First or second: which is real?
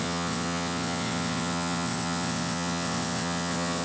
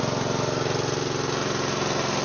second